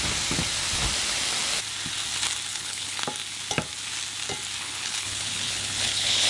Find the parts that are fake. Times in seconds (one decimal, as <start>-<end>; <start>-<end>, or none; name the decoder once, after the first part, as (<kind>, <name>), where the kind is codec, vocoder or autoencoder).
2.5-3.0 (codec, HILCodec); 4.6-6.3